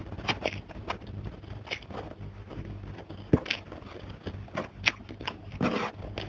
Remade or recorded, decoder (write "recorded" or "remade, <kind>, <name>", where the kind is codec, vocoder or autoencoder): recorded